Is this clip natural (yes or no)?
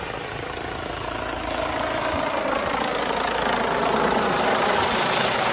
yes